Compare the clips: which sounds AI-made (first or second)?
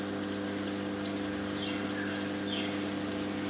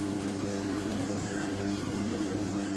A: second